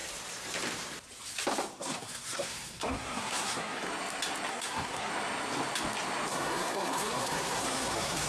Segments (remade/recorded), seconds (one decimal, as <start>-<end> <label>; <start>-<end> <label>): 0.0-1.7 recorded; 1.7-3.9 remade; 3.9-4.5 recorded; 4.5-5.1 remade; 5.1-6.3 recorded; 6.3-8.3 remade